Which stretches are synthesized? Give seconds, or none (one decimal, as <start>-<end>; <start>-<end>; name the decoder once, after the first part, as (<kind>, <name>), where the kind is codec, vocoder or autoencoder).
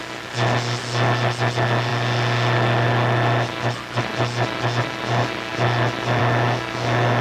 none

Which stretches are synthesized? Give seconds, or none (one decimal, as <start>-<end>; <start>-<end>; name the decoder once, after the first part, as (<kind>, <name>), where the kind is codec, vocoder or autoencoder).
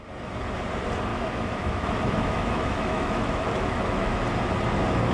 1.1-4.2 (autoencoder, DAC-VAE)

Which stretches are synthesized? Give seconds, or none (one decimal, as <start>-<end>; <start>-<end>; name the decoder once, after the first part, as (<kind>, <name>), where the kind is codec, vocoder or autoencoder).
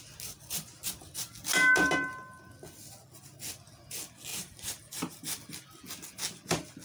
4.3-5.4 (vocoder, BigVGAN v2)